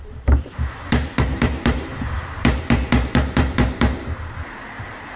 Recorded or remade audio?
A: remade